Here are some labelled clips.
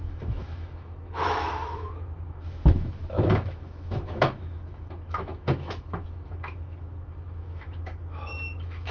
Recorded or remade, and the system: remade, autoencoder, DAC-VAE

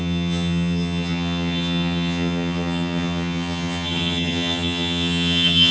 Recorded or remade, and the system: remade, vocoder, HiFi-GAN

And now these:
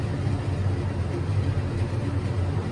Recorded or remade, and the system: recorded